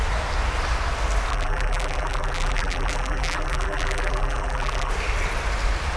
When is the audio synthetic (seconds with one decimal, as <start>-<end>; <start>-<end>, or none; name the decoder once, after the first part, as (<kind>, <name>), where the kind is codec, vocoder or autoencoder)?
1.3-4.9 (vocoder, BigVGAN v2)